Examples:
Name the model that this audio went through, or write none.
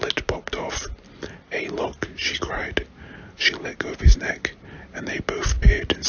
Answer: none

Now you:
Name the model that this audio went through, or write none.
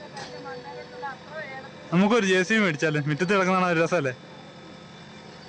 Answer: none